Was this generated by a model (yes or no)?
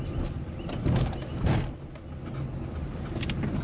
no